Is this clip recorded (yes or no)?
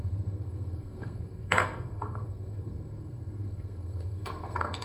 no